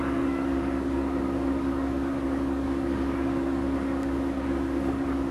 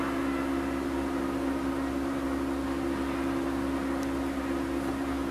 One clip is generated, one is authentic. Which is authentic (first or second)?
second